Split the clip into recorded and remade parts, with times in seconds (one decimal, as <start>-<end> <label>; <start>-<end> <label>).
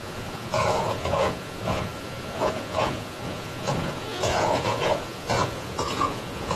0.0-6.6 remade